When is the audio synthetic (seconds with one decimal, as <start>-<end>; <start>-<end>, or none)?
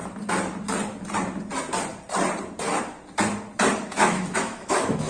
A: 3.9-5.1